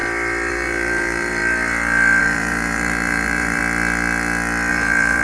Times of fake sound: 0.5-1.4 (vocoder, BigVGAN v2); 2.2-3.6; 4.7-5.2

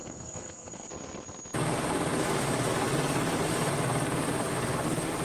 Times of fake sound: 0.0-0.9 (codec, SNAC)

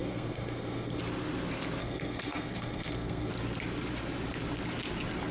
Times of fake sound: 0.0-1.0 (codec, SNAC); 1.8-3.3

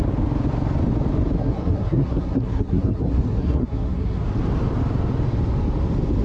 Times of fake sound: 1.4-4.2 (codec, SNAC)